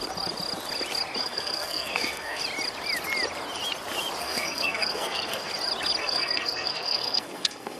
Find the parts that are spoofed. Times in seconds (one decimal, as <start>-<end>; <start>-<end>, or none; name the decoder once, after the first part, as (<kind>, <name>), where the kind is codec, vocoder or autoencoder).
1.2-2.4 (codec, SNAC); 4.2-5.5; 6.0-7.8